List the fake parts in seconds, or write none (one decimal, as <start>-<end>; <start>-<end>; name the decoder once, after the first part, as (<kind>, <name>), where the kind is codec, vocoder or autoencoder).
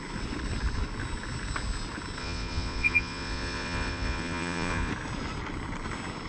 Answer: 2.2-4.9 (vocoder, Vocos)